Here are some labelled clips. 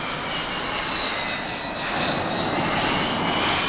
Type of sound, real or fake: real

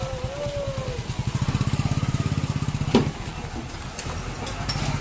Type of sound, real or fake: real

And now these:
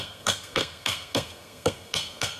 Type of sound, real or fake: fake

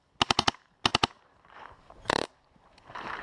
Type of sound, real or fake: fake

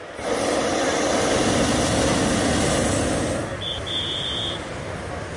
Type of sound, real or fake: real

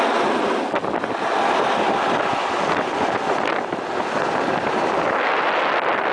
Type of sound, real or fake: real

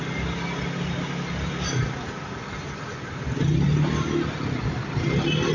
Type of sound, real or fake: real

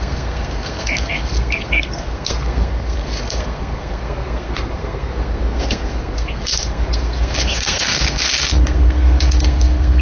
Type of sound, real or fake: fake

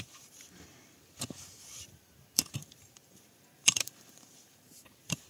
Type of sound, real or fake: fake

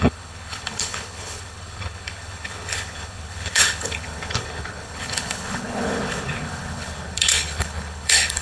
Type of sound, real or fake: fake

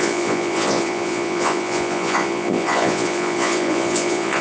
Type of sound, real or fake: fake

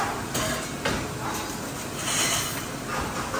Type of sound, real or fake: real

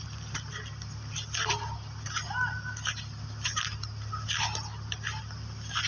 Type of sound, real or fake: real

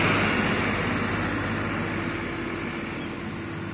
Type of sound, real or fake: real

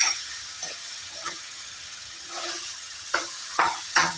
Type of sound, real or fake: fake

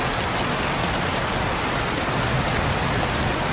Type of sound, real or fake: real